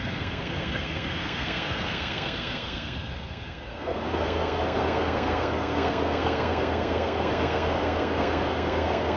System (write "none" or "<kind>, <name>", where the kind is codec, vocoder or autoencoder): codec, SNAC